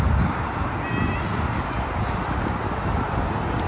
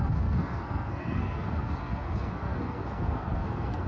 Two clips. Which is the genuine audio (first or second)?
first